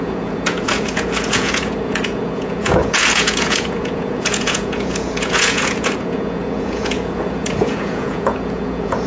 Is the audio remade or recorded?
remade